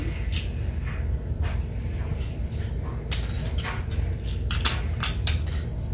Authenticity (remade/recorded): recorded